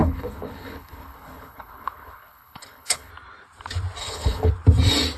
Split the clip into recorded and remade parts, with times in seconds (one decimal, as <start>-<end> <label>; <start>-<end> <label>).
0.0-3.1 remade; 3.1-4.0 recorded; 4.0-4.5 remade; 4.5-5.2 recorded